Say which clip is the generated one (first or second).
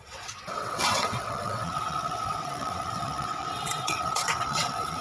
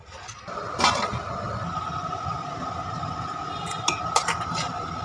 first